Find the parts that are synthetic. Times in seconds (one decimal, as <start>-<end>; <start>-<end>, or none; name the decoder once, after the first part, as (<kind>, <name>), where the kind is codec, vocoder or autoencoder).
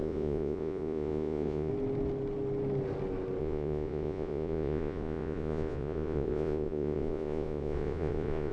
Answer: 0.0-1.7 (vocoder, Vocos); 3.4-8.5